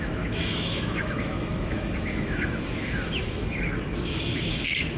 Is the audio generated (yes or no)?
yes